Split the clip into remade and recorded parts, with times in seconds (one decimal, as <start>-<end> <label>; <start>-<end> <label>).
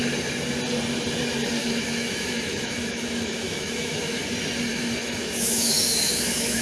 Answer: 0.0-1.6 recorded; 1.6-4.2 remade; 4.2-4.7 recorded; 4.7-6.6 remade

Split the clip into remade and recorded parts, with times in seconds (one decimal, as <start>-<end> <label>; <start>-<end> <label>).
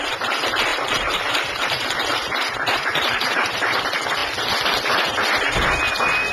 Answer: 0.0-0.7 recorded; 0.7-3.8 remade; 3.8-6.3 recorded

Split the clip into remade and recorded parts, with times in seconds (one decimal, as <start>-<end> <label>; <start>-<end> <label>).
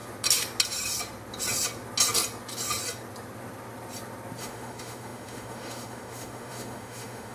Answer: 0.0-4.4 recorded; 4.4-7.3 remade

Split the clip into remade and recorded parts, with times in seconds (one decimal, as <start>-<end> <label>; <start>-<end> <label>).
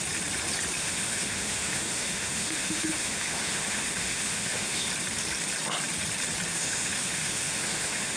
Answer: 0.0-0.8 recorded; 0.8-4.9 remade; 4.9-6.5 recorded; 6.5-8.2 remade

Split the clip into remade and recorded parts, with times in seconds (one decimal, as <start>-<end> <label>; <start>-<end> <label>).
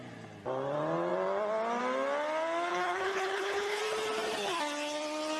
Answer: 0.0-2.7 recorded; 2.7-3.8 remade; 3.8-5.4 recorded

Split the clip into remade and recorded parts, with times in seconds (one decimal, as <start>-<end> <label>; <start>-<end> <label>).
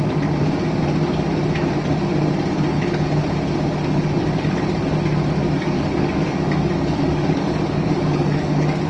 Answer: 0.0-5.4 recorded; 5.4-8.9 remade